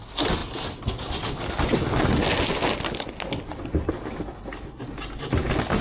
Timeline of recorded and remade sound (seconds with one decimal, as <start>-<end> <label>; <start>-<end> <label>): 0.0-5.8 recorded